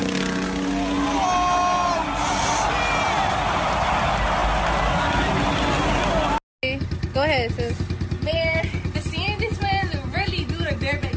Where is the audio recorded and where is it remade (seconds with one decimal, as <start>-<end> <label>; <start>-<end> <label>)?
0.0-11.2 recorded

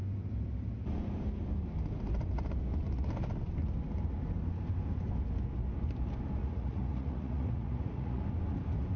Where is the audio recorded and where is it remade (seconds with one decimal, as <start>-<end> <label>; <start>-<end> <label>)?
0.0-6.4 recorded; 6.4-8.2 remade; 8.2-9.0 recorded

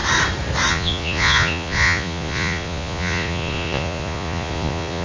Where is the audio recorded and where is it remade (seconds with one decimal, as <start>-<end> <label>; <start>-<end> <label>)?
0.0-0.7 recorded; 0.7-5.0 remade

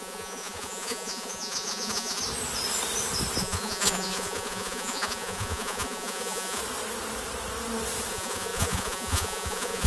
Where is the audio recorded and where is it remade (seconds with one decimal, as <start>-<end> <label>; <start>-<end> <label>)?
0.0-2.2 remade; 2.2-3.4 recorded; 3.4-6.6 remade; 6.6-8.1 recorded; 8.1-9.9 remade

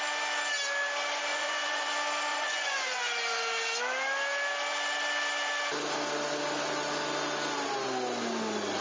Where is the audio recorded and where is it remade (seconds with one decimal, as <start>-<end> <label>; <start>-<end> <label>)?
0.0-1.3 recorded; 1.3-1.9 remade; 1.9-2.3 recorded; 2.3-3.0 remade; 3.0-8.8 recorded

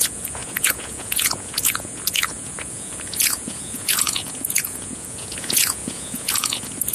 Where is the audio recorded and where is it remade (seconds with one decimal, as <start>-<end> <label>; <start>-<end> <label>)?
0.0-6.9 remade

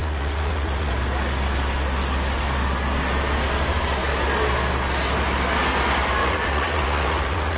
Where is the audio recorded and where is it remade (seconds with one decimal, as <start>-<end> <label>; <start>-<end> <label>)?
0.0-0.9 remade; 0.9-6.2 recorded; 6.2-7.6 remade